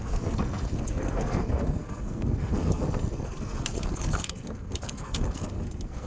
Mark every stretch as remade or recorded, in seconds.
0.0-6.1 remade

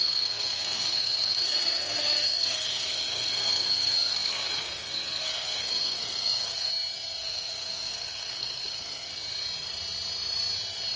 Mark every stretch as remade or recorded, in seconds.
0.0-6.7 remade; 6.7-7.2 recorded; 7.2-9.1 remade; 9.1-11.0 recorded

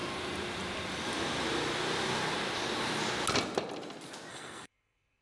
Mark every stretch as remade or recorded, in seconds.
0.0-4.3 recorded; 4.3-5.2 remade